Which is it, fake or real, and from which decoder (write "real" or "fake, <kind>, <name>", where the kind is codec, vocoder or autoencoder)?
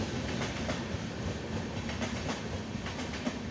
real